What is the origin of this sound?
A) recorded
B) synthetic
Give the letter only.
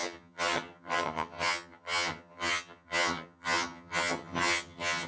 B